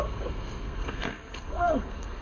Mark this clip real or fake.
fake